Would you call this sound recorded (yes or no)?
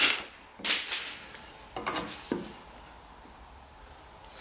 yes